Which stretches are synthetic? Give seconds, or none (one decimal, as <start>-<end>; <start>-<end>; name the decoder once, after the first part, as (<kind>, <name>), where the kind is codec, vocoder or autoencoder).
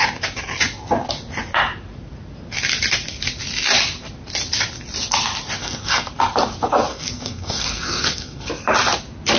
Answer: 5.6-6.1 (codec, SNAC); 6.9-8.5